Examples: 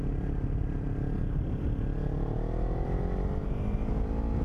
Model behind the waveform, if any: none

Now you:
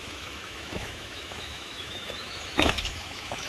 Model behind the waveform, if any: autoencoder, DAC-VAE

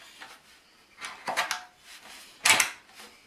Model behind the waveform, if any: none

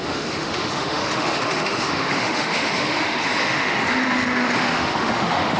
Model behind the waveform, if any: autoencoder, DAC-VAE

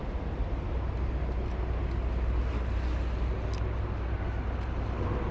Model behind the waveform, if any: none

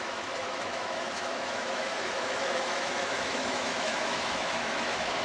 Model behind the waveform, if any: autoencoder, DAC-VAE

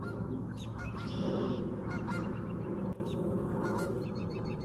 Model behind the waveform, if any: autoencoder, DAC-VAE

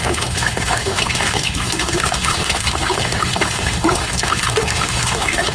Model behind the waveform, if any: autoencoder, DAC-VAE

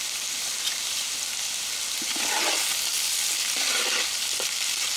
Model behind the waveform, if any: none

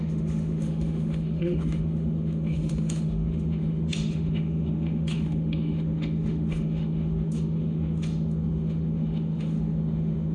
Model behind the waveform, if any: autoencoder, DAC-VAE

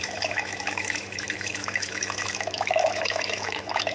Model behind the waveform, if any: autoencoder, DAC-VAE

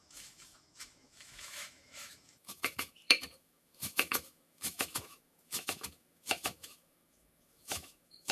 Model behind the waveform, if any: autoencoder, DAC-VAE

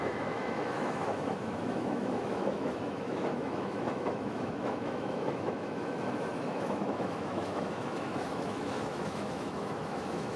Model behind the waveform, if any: autoencoder, DAC-VAE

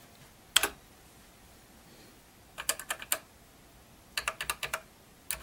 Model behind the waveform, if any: none